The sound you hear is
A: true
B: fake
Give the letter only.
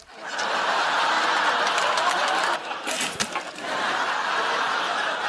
A